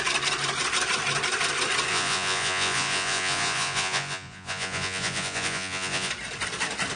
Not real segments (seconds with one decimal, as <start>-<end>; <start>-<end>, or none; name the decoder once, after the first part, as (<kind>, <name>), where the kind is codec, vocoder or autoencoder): 1.9-6.1 (vocoder, Vocos)